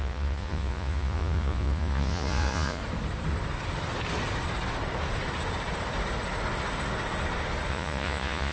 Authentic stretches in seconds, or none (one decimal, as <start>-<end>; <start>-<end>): 2.8-7.7